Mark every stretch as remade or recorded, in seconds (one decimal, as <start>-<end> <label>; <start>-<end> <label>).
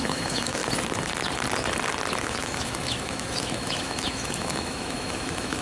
0.0-0.6 remade; 0.6-2.2 recorded; 2.2-5.6 remade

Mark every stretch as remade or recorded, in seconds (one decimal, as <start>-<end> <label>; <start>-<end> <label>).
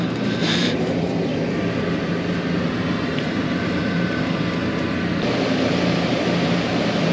0.0-1.3 remade; 1.3-2.6 recorded; 2.6-4.6 remade; 4.6-5.7 recorded; 5.7-7.1 remade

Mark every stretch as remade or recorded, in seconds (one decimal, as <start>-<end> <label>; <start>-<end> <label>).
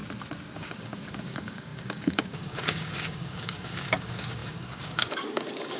0.0-0.6 recorded; 0.6-5.8 remade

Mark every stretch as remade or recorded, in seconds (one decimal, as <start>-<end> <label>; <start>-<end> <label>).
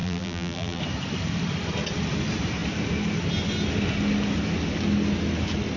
0.0-0.8 remade; 0.8-5.8 recorded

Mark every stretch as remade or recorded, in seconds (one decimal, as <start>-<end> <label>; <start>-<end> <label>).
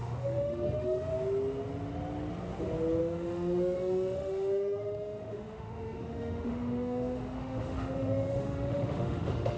0.0-1.1 remade; 1.1-3.0 recorded; 3.0-9.6 remade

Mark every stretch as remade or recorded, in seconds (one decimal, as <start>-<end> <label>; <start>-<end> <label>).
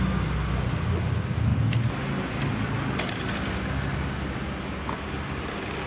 0.0-5.9 recorded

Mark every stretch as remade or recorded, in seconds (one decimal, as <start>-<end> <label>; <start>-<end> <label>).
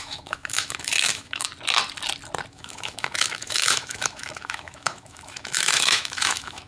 0.0-1.5 remade; 1.5-2.5 recorded; 2.5-6.7 remade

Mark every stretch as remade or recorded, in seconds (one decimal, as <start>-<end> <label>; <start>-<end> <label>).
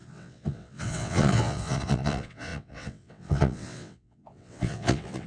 0.0-5.3 remade